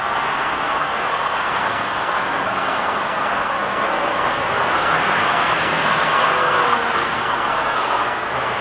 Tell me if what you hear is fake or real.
fake